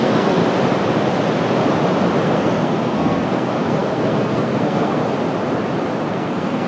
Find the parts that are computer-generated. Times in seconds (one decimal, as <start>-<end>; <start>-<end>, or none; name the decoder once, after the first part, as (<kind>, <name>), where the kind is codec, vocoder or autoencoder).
0.0-0.4 (codec, SNAC); 2.2-5.0; 6.1-6.7